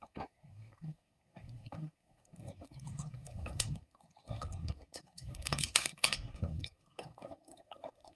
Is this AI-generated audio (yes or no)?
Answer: yes